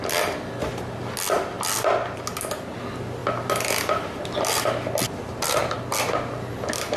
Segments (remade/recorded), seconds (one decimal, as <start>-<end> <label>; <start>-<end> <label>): 0.0-7.0 recorded